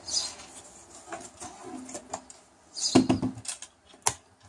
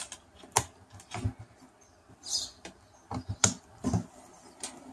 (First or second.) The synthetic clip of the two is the second